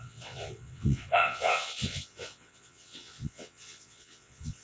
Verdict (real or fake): fake